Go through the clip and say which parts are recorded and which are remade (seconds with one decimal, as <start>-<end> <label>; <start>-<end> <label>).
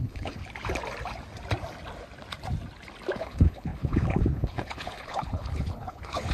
0.0-0.4 remade; 0.4-3.2 recorded; 3.2-6.3 remade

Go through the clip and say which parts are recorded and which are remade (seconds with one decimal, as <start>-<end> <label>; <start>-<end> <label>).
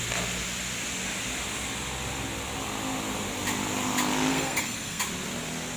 0.0-4.3 recorded; 4.3-5.0 remade; 5.0-5.8 recorded